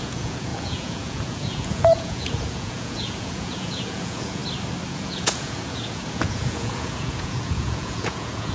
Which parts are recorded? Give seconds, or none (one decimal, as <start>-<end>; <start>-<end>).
4.4-4.9